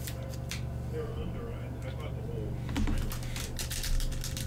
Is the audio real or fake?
real